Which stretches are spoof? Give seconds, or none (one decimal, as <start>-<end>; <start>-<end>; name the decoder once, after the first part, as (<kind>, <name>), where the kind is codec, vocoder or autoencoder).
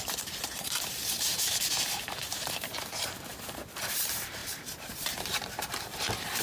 0.0-6.4 (vocoder, BigVGAN v2)